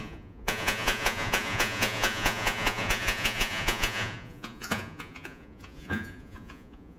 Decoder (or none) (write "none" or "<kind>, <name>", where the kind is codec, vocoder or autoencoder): vocoder, Vocos